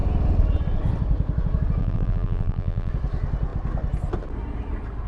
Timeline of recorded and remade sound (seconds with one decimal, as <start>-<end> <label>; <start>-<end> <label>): 0.0-1.8 recorded; 1.8-2.9 remade; 2.9-5.1 recorded